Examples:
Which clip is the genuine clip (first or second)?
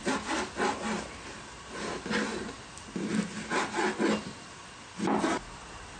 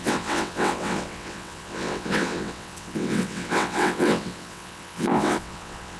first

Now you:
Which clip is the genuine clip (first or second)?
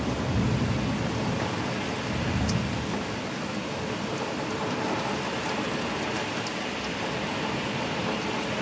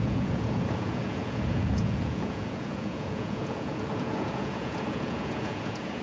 first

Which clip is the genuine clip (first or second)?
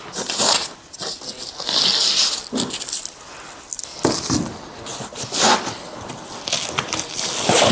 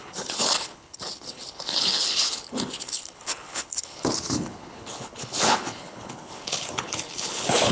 first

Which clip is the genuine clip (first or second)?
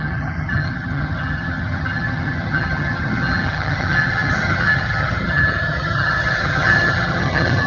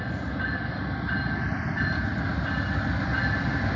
second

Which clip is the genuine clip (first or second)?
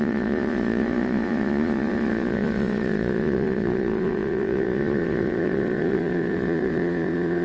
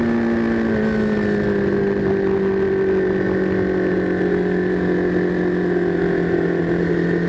second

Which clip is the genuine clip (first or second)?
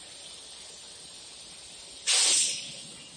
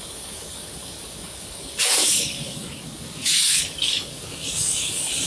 first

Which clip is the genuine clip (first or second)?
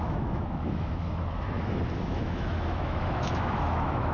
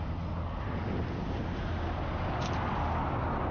second